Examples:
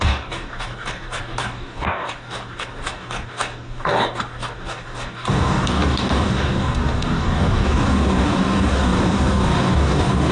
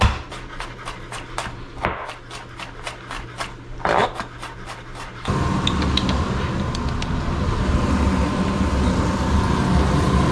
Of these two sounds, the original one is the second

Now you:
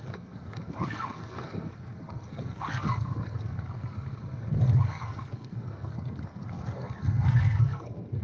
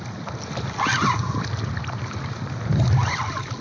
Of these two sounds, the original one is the second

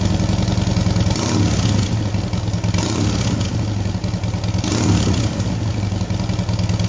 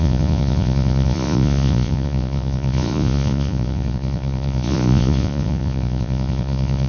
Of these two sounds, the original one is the first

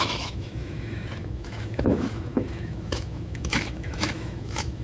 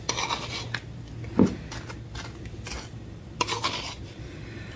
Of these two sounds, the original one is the second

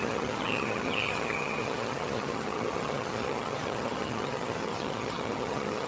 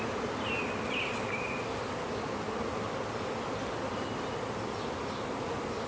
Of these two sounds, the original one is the second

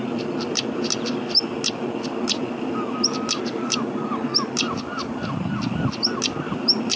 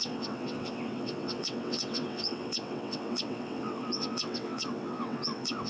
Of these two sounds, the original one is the first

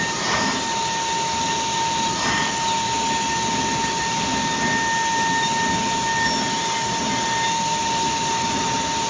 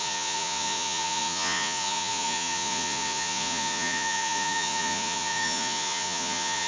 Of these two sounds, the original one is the first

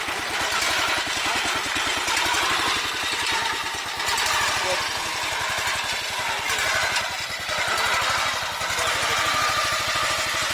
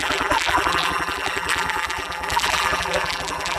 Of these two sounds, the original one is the first